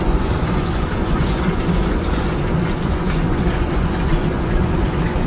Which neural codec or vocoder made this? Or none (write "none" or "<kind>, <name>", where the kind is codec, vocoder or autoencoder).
vocoder, Vocos